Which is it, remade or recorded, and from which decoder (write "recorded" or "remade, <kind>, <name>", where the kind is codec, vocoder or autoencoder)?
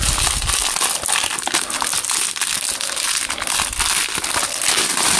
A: recorded